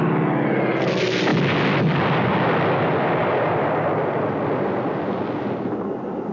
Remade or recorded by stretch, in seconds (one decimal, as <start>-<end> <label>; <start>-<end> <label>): 0.0-6.3 recorded